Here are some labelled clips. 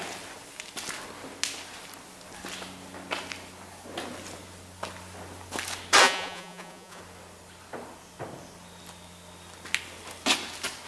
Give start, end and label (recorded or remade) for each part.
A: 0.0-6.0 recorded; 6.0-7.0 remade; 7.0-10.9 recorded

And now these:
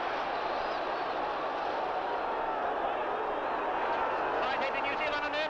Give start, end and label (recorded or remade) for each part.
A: 0.0-5.5 recorded

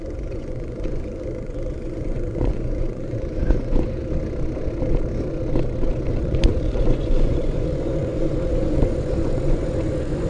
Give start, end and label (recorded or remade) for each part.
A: 0.0-4.0 remade; 4.0-6.1 recorded; 6.1-10.3 remade

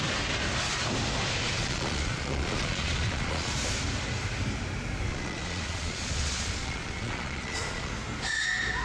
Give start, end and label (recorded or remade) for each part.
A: 0.0-1.6 recorded; 1.6-3.5 remade; 3.5-5.1 recorded; 5.1-7.9 remade; 7.9-8.8 recorded

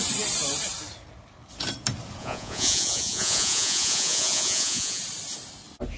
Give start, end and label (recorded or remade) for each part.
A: 0.0-2.2 recorded; 2.2-5.0 remade; 5.0-6.0 recorded

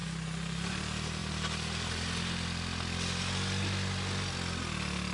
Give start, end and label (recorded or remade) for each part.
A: 0.0-5.1 recorded